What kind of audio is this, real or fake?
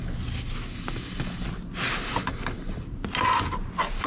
real